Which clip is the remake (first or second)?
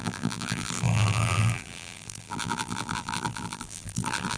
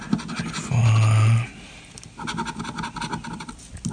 first